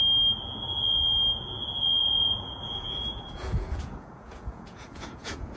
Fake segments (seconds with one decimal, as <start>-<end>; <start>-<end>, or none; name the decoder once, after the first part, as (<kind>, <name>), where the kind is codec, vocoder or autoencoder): 2.0-5.6 (vocoder, Vocos)